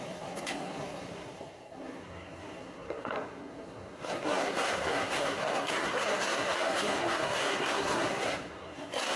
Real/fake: fake